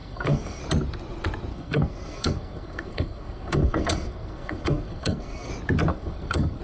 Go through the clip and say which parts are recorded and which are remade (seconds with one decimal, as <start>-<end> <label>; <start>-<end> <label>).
0.0-0.6 remade; 0.6-1.5 recorded; 1.5-5.5 remade; 5.5-5.9 recorded; 5.9-6.6 remade